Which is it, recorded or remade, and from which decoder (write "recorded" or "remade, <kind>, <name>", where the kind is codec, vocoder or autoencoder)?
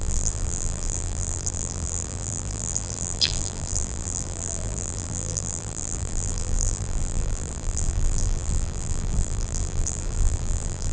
remade, vocoder, BigVGAN v2